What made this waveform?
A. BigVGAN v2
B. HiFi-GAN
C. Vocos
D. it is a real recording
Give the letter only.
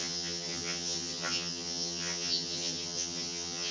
B